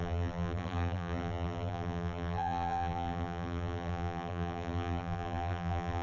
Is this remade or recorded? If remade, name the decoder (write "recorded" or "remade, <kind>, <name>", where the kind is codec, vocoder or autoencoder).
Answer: remade, vocoder, BigVGAN v2